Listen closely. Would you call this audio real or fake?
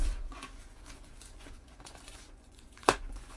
fake